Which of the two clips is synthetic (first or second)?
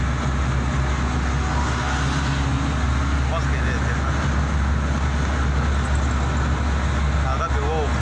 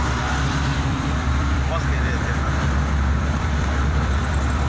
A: second